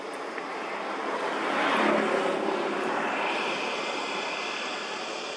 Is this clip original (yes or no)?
yes